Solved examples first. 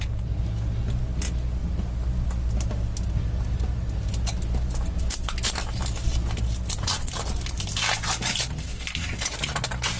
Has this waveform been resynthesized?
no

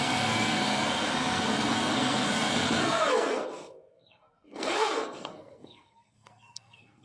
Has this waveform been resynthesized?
yes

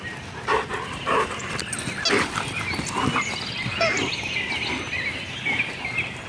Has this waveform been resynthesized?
no